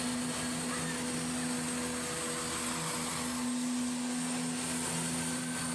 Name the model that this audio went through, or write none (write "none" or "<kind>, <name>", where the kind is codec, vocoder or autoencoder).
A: none